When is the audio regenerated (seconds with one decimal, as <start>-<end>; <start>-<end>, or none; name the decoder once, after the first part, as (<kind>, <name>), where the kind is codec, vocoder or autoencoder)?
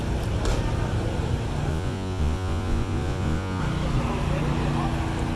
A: 1.7-3.6 (vocoder, Vocos)